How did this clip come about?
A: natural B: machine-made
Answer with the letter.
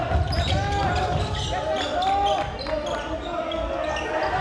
A